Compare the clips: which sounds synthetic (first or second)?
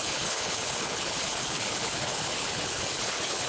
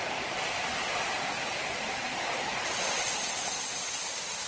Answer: first